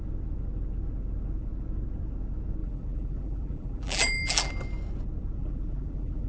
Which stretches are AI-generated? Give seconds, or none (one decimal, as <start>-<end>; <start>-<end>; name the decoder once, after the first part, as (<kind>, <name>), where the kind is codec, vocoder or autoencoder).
2.6-4.5 (vocoder, BigVGAN v2); 5.4-6.3